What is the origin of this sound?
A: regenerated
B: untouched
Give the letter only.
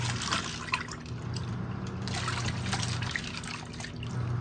B